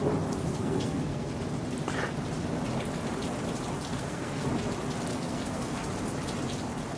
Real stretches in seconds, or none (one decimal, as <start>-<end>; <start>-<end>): 0.0-0.5; 1.3-3.9; 4.5-5.1; 5.9-7.0